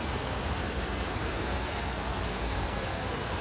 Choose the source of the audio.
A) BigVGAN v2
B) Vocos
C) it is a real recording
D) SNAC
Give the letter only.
D